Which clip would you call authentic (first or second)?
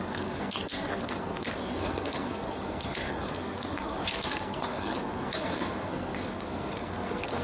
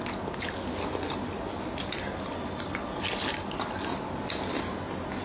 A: second